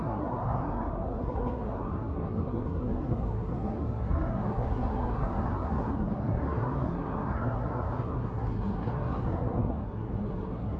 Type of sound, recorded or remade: remade